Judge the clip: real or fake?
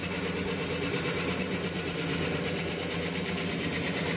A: real